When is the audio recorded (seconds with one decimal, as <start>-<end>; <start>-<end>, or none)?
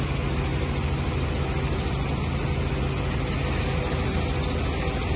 0.0-5.2